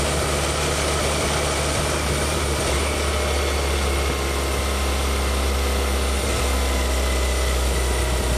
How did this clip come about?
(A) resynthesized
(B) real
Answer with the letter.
B